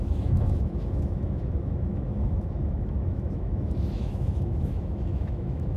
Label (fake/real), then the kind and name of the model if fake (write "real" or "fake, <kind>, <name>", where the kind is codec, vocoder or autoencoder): fake, autoencoder, DAC-VAE